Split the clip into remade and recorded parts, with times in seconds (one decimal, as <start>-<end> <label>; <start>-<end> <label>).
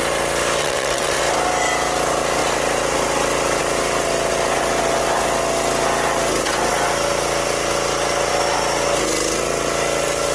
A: 0.0-0.6 recorded; 0.6-1.2 remade; 1.2-10.3 recorded